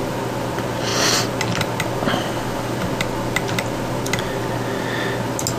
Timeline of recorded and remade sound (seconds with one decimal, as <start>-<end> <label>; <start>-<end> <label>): 0.0-5.6 recorded